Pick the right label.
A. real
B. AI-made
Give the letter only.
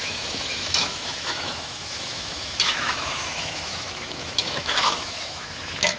B